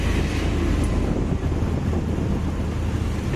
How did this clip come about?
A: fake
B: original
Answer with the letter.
B